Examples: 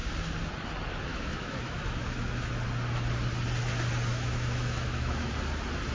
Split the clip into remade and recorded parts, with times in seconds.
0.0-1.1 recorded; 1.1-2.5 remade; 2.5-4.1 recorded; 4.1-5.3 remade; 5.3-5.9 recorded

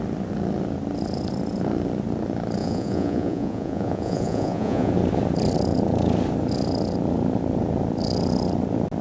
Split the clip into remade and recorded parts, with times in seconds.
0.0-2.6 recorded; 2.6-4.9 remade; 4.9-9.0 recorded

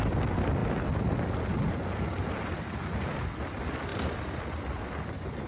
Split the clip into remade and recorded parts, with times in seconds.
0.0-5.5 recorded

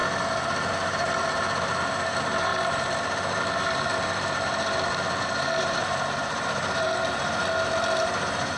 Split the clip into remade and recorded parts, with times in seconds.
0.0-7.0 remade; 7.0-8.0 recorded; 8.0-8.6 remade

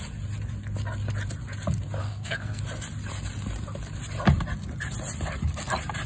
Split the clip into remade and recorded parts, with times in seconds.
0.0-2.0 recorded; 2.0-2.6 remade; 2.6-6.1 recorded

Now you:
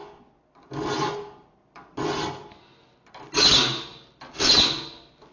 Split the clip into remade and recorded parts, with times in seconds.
0.0-5.3 recorded

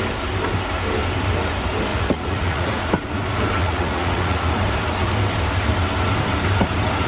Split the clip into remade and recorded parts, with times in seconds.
0.0-1.9 recorded; 1.9-2.9 remade; 2.9-3.6 recorded; 3.6-4.5 remade; 4.5-7.1 recorded

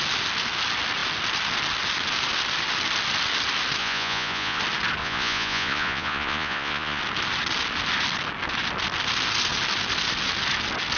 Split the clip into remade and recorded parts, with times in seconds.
0.0-3.8 recorded; 3.8-4.6 remade; 4.6-5.0 recorded; 5.0-7.0 remade; 7.0-11.0 recorded